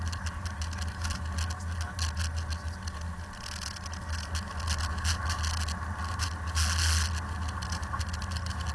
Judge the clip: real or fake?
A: real